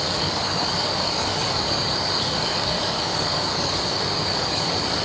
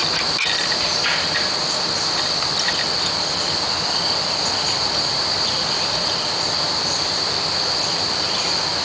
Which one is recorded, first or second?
second